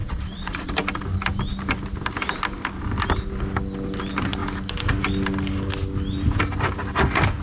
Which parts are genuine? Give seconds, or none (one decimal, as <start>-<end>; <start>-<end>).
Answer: 0.7-7.4